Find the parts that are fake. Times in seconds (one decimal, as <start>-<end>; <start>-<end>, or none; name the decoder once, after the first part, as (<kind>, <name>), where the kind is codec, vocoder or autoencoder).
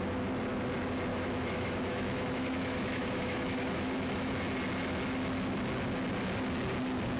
1.1-4.3 (autoencoder, DAC-VAE)